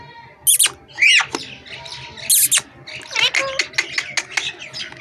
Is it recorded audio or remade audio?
recorded